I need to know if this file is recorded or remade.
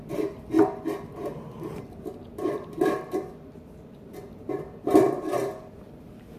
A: recorded